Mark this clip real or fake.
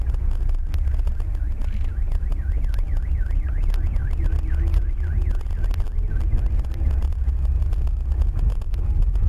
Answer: real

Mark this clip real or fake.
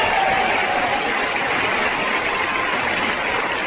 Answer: real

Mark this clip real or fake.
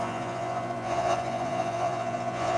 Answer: fake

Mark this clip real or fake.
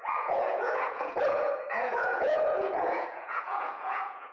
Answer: fake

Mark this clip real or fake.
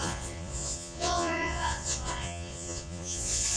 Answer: fake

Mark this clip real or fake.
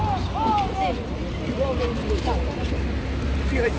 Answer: real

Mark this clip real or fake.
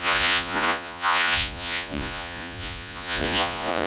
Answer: fake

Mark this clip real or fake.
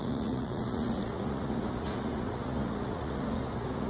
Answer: fake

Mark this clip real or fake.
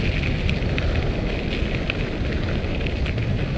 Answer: real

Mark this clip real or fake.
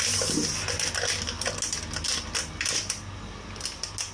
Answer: real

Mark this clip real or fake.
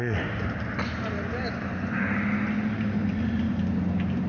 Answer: real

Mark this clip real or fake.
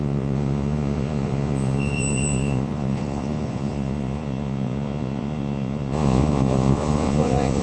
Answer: fake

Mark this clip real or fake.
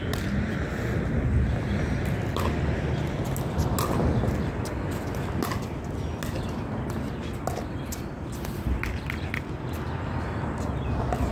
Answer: real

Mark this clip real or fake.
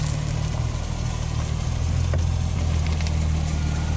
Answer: real